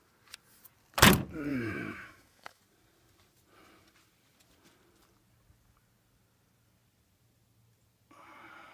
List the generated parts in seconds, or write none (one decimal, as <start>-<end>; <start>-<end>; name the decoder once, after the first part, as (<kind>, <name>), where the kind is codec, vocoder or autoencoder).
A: 1.5-2.6 (autoencoder, DAC-VAE)